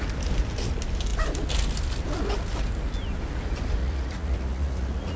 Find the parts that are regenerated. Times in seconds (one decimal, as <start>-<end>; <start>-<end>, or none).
3.8-5.2